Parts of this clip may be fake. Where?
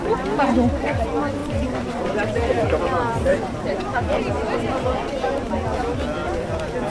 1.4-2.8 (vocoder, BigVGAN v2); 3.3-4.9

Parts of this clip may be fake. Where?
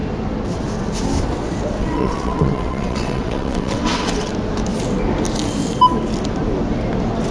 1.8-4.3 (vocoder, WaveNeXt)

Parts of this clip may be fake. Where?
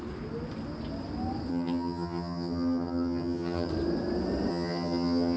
1.5-3.7 (vocoder, HiFi-GAN); 4.5-5.4